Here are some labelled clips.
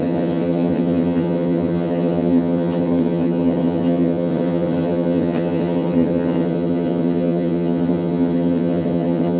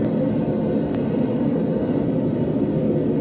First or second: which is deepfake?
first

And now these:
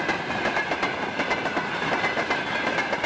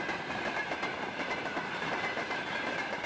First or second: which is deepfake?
second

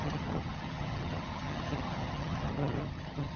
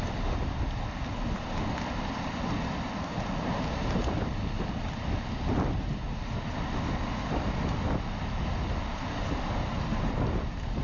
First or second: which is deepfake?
first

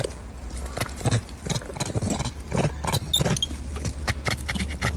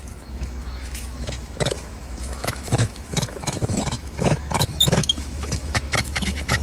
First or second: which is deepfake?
second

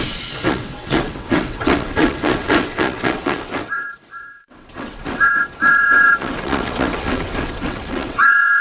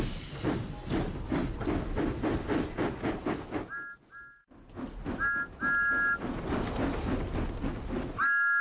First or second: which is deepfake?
first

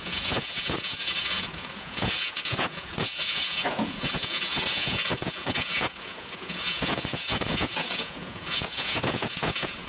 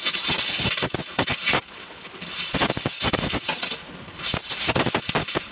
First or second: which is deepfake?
first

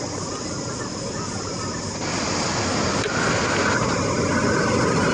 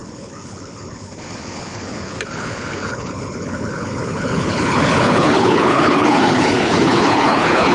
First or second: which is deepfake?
second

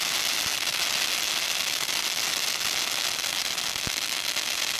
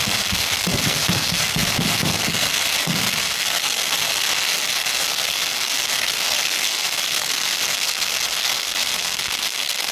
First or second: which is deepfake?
second